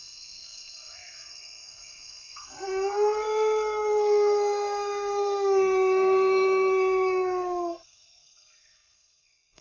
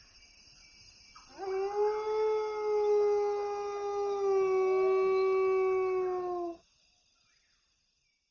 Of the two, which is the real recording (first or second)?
second